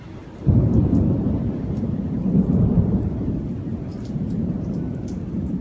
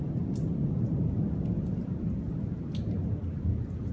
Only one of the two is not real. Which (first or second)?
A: first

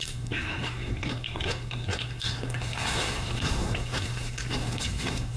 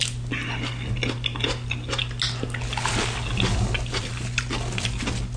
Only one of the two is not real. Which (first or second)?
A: first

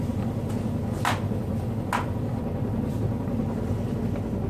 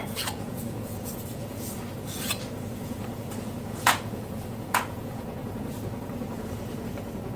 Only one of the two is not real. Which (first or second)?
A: second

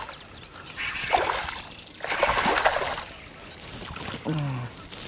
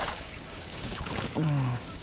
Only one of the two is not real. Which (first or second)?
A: second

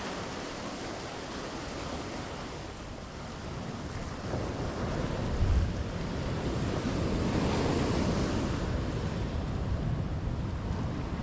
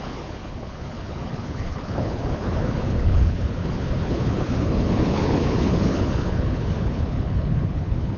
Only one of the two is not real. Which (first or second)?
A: second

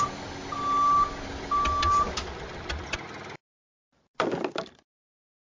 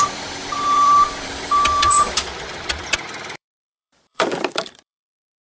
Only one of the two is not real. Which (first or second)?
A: second